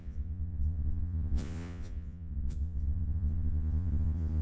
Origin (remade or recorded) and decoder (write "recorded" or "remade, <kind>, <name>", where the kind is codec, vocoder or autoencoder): remade, vocoder, Vocos